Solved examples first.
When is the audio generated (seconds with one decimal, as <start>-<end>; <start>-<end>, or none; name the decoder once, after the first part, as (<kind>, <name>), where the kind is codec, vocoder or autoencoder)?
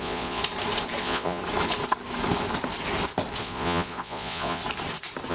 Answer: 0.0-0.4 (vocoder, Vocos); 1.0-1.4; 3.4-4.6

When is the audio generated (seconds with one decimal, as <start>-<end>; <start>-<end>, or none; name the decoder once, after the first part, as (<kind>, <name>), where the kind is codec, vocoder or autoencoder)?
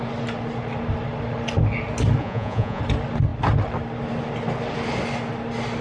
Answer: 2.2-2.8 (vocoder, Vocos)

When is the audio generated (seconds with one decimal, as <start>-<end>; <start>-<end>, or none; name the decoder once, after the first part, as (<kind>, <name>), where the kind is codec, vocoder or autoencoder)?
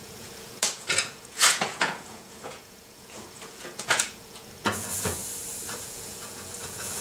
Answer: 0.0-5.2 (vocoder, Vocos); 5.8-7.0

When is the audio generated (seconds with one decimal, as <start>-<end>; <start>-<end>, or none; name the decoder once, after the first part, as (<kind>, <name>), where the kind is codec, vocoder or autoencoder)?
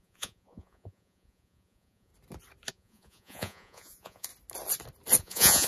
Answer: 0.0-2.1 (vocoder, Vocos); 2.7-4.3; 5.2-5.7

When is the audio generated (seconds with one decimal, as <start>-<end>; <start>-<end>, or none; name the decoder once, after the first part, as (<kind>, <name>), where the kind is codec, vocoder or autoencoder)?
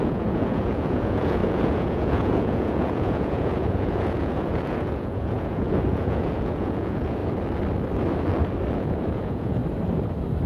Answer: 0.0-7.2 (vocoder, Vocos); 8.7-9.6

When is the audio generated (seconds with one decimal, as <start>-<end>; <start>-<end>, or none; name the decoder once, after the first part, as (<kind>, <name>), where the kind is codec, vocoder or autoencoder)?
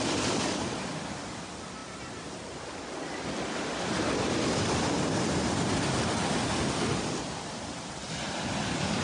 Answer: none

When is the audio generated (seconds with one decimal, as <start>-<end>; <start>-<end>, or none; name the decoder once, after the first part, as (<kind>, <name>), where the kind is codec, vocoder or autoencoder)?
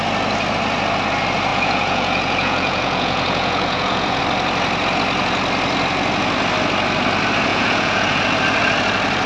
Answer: 1.5-4.2 (vocoder, Vocos); 7.5-8.2